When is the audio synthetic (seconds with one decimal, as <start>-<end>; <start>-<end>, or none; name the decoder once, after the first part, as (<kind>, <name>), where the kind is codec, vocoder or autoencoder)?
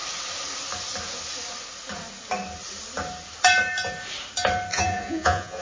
4.7-5.6 (vocoder, Vocos)